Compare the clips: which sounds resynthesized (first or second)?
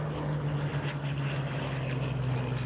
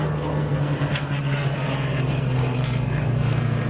second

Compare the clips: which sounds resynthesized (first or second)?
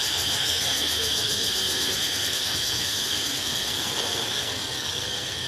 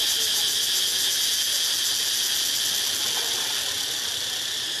first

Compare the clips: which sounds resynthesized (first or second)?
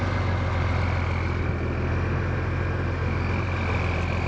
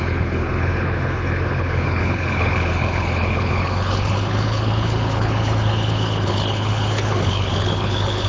second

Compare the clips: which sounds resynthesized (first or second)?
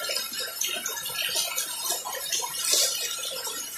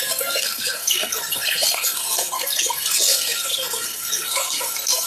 second